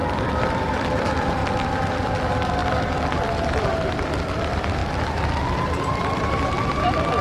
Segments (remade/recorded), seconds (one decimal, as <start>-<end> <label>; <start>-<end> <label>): 0.0-2.6 remade; 2.6-3.5 recorded; 3.5-4.8 remade; 4.8-5.5 recorded; 5.5-7.2 remade